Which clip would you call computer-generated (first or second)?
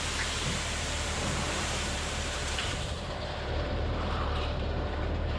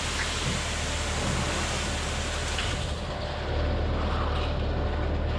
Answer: first